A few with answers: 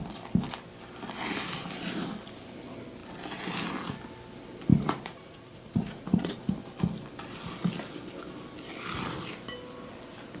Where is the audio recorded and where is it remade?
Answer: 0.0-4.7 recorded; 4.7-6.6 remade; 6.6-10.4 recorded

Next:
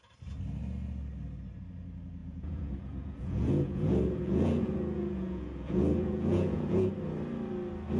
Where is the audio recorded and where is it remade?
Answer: 0.0-2.2 recorded; 2.2-6.9 remade; 6.9-8.0 recorded

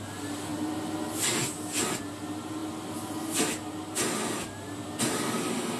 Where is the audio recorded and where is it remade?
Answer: 0.0-5.8 recorded

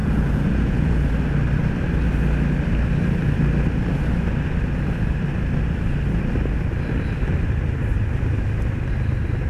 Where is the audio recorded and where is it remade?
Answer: 0.0-1.1 remade; 1.1-9.5 recorded

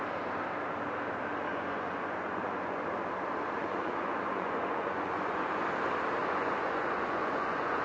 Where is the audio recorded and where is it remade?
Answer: 0.0-1.5 recorded; 1.5-2.8 remade; 2.8-3.6 recorded; 3.6-5.6 remade; 5.6-6.2 recorded; 6.2-7.8 remade